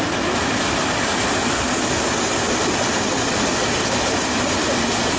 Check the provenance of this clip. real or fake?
real